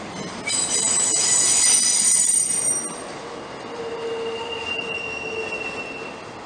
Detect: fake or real real